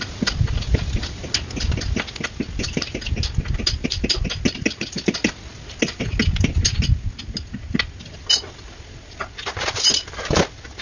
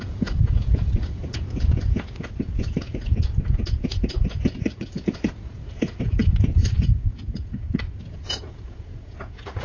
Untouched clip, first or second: first